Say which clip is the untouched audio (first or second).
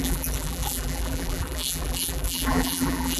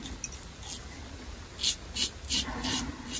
second